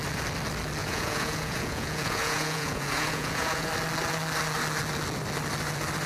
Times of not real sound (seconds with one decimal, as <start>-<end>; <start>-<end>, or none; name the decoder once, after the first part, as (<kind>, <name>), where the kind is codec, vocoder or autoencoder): 0.8-3.7 (vocoder, Vocos)